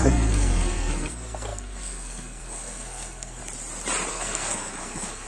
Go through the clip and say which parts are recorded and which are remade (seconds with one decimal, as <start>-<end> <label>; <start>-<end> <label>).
0.0-3.4 remade; 3.4-4.1 recorded; 4.1-5.3 remade